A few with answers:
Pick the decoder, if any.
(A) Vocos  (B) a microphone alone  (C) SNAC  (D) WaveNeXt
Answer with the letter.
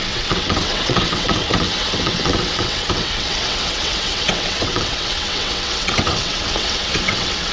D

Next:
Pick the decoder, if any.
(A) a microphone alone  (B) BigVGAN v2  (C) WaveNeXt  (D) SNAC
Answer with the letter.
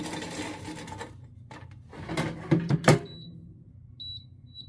A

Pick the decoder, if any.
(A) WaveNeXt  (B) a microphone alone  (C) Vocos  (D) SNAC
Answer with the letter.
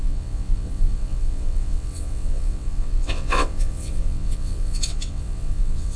A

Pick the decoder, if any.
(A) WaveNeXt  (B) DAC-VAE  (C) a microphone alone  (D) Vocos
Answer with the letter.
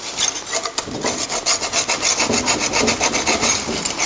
C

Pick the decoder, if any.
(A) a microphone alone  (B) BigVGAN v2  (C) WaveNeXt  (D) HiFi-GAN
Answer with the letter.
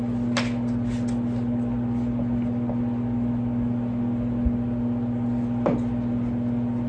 A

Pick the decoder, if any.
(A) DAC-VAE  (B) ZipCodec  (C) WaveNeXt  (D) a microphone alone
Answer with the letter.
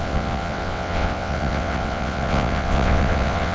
C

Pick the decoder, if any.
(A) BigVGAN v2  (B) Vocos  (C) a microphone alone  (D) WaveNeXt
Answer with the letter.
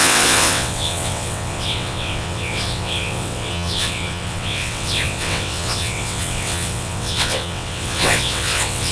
D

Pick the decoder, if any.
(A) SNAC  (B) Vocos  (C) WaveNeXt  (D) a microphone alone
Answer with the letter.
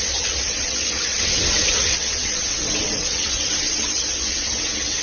C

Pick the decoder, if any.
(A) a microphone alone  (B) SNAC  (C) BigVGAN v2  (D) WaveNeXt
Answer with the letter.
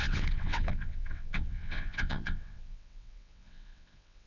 D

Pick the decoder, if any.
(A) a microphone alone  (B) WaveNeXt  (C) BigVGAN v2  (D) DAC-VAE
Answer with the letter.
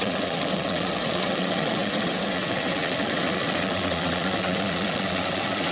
B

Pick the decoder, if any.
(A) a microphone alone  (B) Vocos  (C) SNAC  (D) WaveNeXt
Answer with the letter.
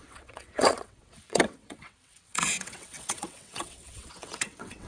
D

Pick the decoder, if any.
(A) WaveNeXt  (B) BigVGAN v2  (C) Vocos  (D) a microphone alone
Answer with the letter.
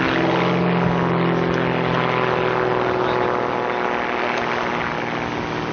D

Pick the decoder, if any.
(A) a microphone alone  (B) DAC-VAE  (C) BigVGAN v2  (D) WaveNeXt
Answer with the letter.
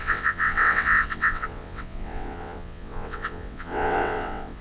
D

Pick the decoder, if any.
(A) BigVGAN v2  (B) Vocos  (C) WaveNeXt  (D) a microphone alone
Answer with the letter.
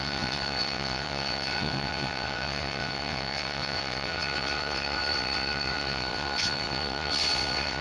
C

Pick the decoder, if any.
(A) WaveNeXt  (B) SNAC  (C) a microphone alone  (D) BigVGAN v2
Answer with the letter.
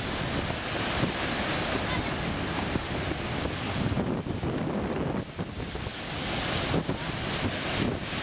C